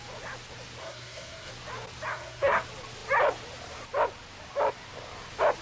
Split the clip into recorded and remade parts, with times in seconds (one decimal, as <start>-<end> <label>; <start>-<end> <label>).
0.0-0.8 recorded; 0.8-1.5 remade; 1.5-2.1 recorded; 2.1-2.6 remade; 2.6-5.6 recorded